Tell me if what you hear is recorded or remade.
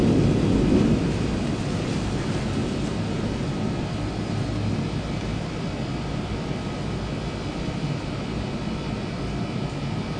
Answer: recorded